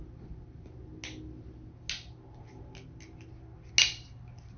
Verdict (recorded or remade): recorded